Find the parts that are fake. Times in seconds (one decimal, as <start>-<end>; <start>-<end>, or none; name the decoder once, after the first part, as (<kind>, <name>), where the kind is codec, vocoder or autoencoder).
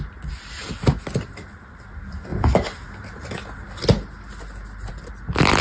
none